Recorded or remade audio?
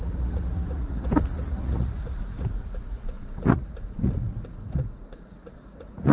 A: remade